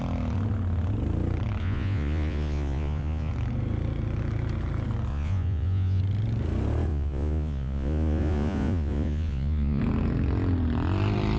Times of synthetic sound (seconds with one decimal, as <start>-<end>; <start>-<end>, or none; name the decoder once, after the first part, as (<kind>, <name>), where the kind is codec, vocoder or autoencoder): 1.6-3.3 (vocoder, Vocos); 5.1-6.0; 6.9-9.8